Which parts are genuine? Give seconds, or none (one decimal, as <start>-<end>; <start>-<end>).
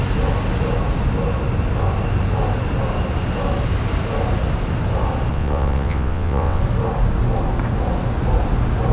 0.0-5.3; 6.6-8.9